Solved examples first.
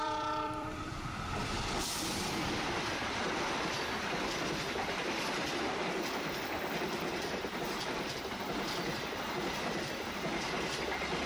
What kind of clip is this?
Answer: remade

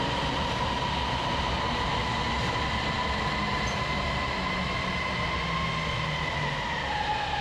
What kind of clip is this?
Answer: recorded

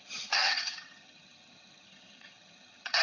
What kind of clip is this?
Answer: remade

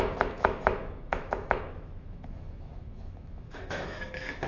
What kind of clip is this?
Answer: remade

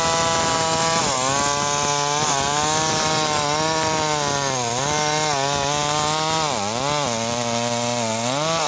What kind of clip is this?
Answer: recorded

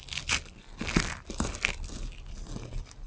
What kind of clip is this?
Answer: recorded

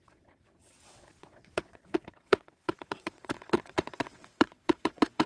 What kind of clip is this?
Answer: remade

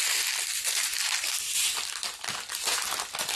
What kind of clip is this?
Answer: recorded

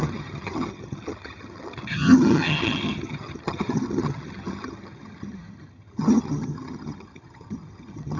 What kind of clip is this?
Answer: remade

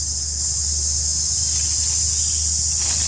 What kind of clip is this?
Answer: recorded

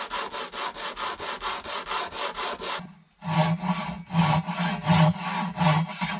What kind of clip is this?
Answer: recorded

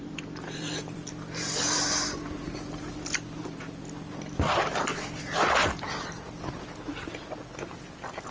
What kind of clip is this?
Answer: recorded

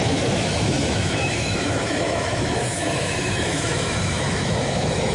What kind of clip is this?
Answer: remade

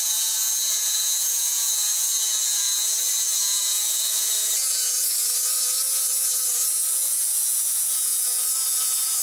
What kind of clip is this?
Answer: remade